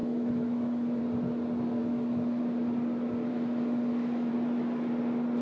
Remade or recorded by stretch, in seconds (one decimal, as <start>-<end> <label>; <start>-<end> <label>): 0.0-1.0 remade; 1.0-1.8 recorded; 1.8-2.4 remade; 2.4-3.3 recorded; 3.3-4.3 remade; 4.3-5.4 recorded